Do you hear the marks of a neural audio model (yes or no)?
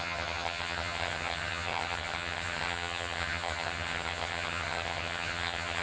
yes